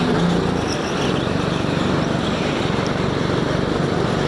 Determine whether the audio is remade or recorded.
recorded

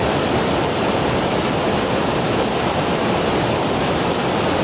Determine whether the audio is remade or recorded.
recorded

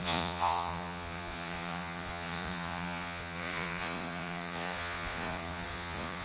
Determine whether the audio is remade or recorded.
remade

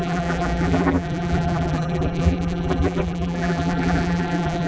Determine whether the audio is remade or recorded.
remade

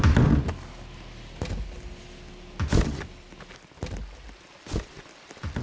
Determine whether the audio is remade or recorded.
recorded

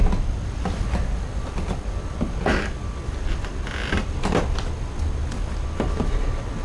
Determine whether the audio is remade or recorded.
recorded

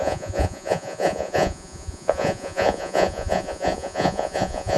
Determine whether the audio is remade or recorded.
remade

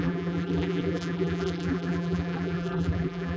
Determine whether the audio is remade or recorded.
remade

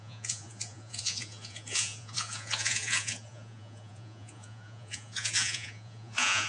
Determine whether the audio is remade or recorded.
remade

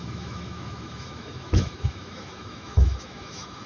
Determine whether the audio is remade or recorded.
remade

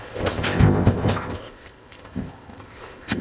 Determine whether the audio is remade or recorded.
remade